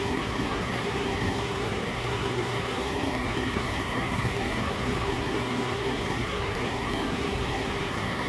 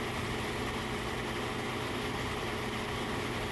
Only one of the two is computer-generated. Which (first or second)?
first